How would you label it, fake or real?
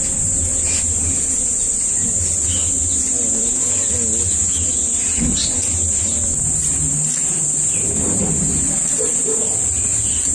real